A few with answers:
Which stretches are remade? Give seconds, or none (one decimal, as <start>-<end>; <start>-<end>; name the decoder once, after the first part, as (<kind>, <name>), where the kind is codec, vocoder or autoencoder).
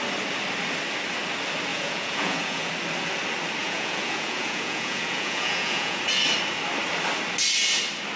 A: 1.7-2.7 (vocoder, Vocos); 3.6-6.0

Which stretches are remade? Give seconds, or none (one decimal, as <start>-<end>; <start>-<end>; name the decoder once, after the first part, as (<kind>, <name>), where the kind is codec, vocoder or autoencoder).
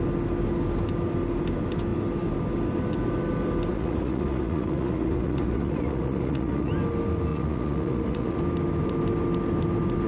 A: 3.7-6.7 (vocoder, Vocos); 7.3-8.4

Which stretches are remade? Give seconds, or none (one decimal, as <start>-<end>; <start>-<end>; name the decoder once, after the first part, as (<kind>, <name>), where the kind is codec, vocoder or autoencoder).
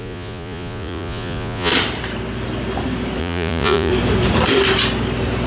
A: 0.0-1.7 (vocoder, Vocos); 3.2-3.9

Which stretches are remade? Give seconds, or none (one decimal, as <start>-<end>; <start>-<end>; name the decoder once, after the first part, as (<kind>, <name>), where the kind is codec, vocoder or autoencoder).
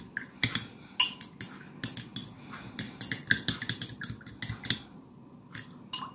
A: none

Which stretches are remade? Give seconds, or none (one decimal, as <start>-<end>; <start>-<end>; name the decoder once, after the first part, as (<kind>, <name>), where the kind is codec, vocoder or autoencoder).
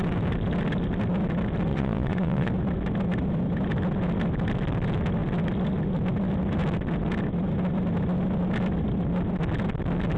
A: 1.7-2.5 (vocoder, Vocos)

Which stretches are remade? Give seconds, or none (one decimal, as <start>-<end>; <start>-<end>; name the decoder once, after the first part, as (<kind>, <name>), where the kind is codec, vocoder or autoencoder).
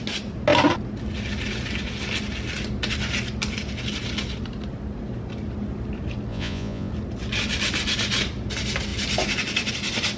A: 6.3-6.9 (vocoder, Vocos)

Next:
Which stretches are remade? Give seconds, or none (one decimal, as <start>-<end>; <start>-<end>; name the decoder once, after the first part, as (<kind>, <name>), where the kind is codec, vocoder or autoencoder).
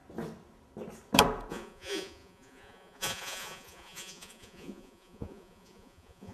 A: 1.5-6.3 (vocoder, Vocos)